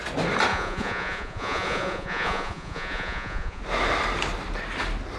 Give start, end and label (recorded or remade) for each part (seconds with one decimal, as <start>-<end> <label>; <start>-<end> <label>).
0.0-0.5 recorded; 0.5-3.6 remade; 3.6-5.2 recorded